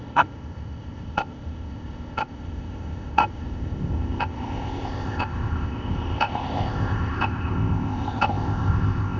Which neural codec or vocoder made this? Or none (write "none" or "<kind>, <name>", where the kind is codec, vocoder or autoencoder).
codec, ZipCodec